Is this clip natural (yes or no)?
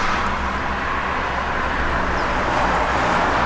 yes